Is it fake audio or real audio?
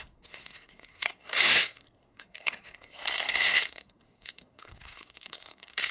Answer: fake